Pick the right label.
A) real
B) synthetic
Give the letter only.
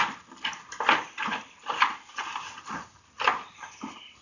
A